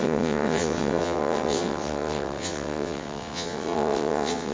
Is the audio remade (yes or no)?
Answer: yes